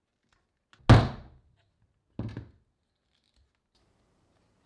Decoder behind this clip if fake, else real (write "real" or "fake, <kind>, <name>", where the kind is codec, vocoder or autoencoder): real